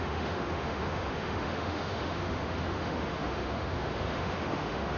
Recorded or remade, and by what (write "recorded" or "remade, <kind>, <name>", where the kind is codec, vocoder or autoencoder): remade, autoencoder, DAC-VAE